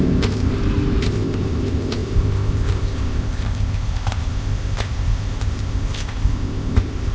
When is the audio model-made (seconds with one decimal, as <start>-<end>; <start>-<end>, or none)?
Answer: 0.0-0.5; 1.0-7.1